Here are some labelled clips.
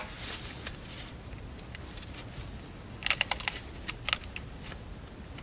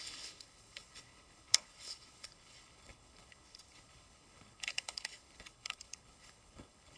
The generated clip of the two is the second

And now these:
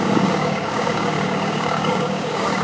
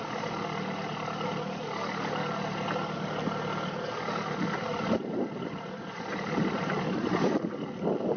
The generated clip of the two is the first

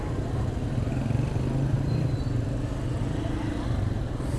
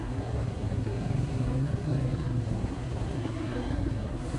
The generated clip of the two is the second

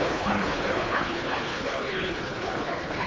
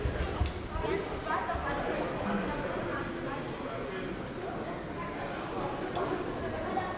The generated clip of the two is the first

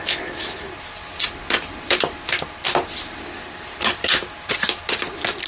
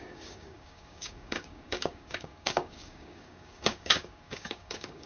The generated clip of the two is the second